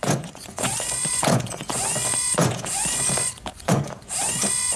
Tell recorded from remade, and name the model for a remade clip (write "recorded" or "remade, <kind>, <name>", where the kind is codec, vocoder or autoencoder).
remade, vocoder, Vocos